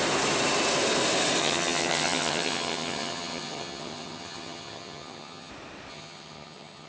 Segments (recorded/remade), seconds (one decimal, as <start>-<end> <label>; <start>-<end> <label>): 0.0-1.4 recorded; 1.4-5.5 remade; 5.5-5.9 recorded; 5.9-6.9 remade